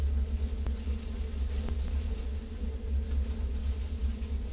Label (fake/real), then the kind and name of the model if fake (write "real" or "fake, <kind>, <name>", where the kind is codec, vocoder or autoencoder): real